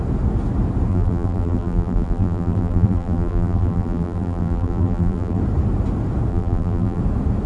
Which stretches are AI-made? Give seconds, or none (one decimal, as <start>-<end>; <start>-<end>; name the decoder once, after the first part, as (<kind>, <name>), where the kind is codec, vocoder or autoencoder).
0.9-5.4 (vocoder, BigVGAN v2); 6.3-7.0